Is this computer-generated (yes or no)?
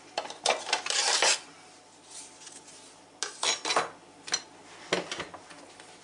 no